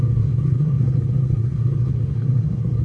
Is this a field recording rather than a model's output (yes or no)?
no